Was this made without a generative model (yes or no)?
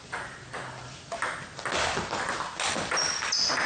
yes